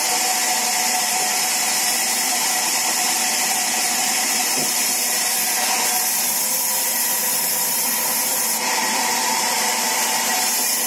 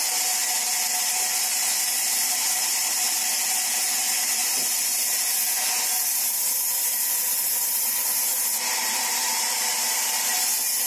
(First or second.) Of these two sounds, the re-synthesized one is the first